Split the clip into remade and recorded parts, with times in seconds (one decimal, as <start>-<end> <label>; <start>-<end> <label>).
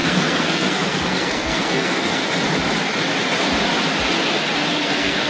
0.0-2.2 remade; 2.2-4.7 recorded; 4.7-5.3 remade